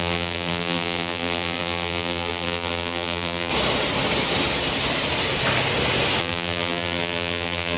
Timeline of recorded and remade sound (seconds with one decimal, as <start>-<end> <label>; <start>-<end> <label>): 0.0-3.5 remade; 3.5-6.2 recorded; 6.2-7.8 remade